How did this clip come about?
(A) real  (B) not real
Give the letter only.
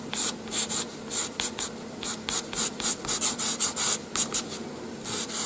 A